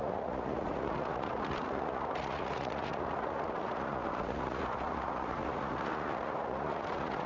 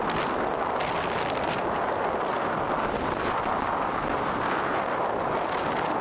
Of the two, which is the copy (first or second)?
first